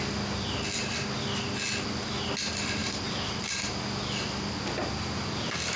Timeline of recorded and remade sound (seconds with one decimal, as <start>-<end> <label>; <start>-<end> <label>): 0.0-2.8 recorded; 2.8-3.8 remade; 3.8-5.8 recorded